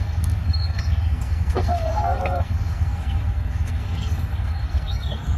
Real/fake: fake